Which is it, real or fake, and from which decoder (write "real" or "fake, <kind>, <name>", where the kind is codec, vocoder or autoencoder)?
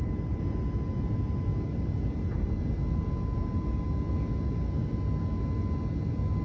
real